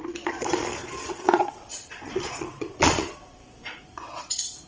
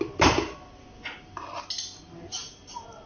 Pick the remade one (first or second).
first